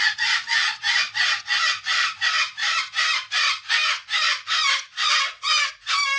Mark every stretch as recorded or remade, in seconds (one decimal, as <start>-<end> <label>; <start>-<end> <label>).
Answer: 0.0-6.2 recorded